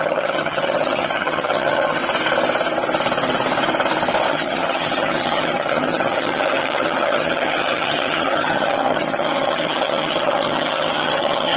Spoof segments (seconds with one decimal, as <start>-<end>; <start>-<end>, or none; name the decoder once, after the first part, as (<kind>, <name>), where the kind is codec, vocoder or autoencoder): 0.0-2.0 (vocoder, HiFi-GAN); 4.3-11.6